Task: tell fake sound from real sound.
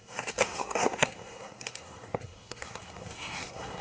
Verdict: fake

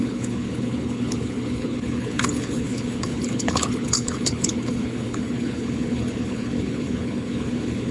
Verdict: fake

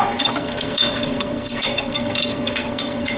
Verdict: fake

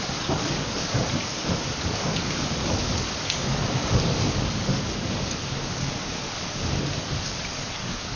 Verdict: fake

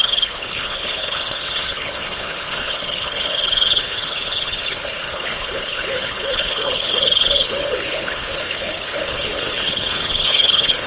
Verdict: fake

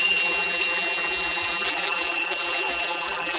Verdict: fake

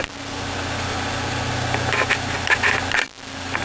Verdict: real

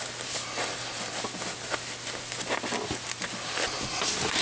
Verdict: real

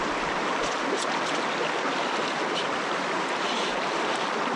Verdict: real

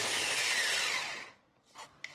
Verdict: real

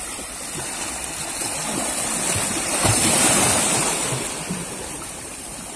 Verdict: fake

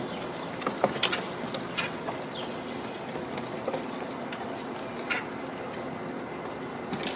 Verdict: real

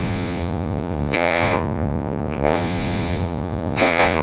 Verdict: fake